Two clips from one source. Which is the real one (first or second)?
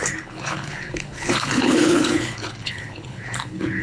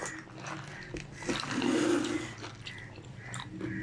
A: second